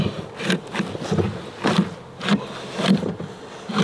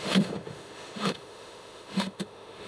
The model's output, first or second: second